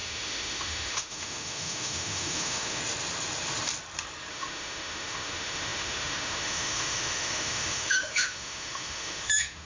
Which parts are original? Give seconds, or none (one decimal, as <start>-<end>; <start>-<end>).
2.8-4.3